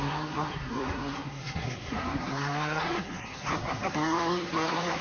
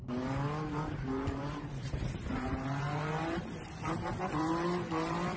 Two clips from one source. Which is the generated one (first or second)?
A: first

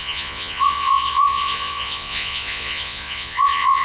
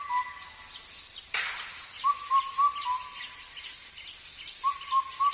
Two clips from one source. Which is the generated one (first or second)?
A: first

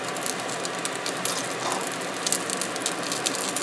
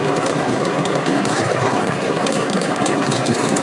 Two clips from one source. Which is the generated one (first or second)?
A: second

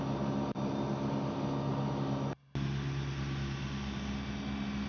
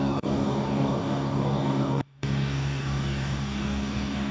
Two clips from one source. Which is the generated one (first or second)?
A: second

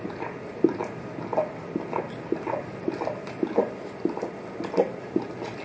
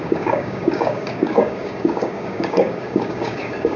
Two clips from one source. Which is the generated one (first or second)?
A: second